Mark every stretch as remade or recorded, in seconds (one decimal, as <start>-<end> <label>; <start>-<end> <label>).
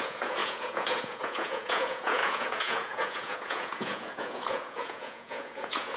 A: 0.0-6.0 remade